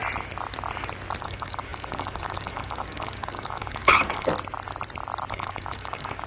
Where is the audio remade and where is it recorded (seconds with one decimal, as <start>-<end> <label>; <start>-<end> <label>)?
0.0-1.2 recorded; 1.2-4.3 remade; 4.3-5.3 recorded; 5.3-6.3 remade